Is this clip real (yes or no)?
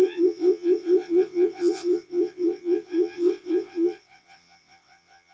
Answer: no